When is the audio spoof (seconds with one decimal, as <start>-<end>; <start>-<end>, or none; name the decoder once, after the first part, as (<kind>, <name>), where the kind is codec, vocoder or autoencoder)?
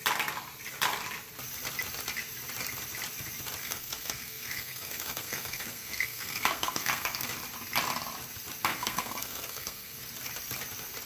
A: 3.6-7.3 (codec, SNAC); 8.7-10.0